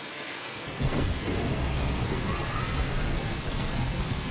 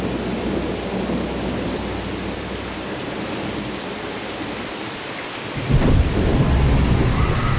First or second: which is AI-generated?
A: first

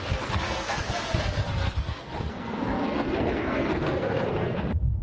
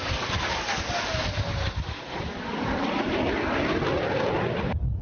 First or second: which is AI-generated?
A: first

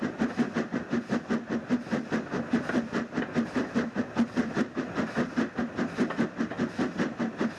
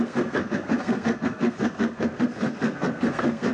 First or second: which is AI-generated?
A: second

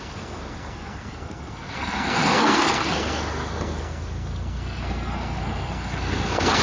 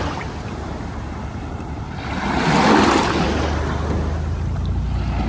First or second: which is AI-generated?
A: first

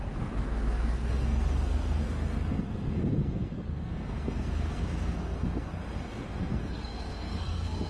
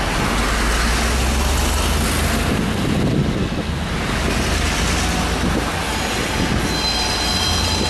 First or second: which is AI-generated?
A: first